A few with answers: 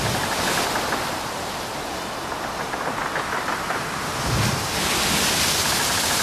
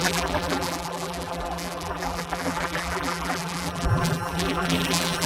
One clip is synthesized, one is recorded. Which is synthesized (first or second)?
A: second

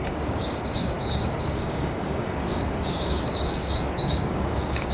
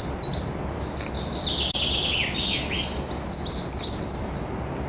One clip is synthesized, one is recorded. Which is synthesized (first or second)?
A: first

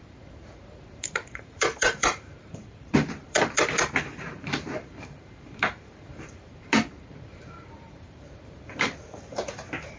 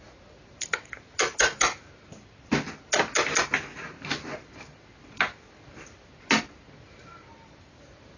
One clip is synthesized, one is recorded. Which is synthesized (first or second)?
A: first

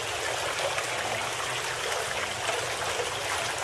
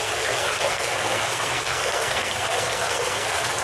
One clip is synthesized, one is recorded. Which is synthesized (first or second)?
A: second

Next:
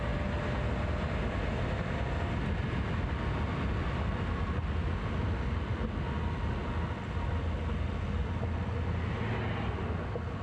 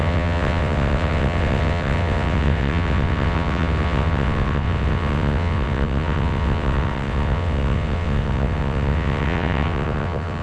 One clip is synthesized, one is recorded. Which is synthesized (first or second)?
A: second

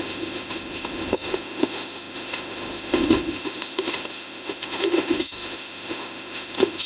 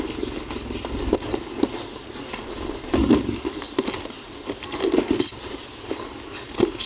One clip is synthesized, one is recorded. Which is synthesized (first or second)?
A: first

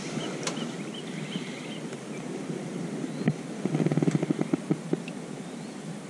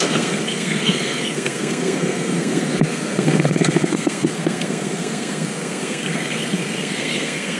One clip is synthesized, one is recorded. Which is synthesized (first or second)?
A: second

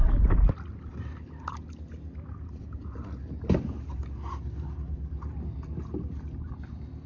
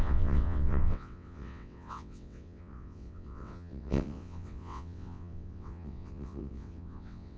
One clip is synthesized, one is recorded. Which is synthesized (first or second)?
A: second